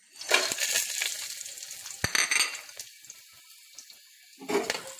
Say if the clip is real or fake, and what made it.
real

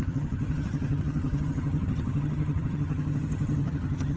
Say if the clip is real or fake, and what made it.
fake, vocoder, HiFi-GAN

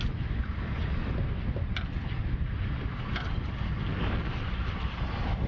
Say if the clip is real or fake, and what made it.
real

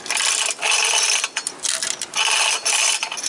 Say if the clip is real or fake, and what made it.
real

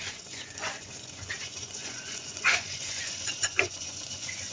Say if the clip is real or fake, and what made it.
fake, vocoder, Vocos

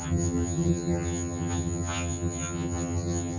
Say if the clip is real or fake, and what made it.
fake, vocoder, HiFi-GAN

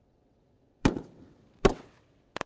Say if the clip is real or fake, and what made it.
fake, vocoder, WaveNeXt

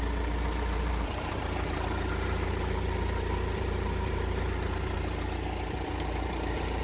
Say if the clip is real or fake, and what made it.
fake, vocoder, BigVGAN v2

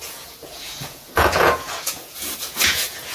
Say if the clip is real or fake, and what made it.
fake, vocoder, Vocos